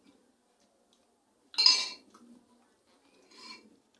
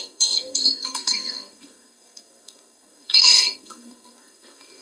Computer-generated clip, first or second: second